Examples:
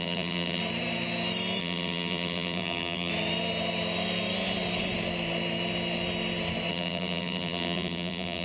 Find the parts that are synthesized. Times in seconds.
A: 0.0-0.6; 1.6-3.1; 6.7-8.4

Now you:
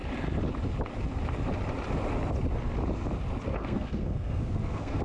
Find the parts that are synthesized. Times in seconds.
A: 3.5-5.0

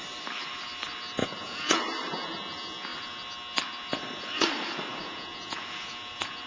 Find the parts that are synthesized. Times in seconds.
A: 1.2-1.8; 4.9-6.5

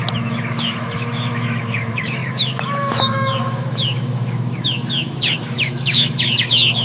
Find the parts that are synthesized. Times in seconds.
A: 0.0-6.8

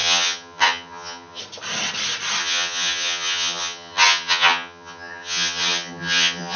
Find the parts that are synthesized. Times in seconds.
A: 0.0-1.4; 2.4-6.6